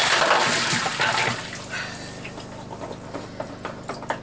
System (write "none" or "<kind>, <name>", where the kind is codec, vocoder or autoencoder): none